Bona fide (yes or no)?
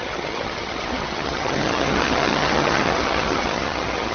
no